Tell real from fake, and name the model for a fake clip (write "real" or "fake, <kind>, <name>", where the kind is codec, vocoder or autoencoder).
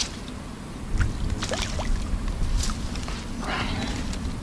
real